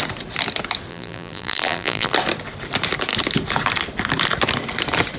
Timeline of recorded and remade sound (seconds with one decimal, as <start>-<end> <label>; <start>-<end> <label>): 0.0-0.9 recorded; 0.9-2.1 remade; 2.1-5.2 recorded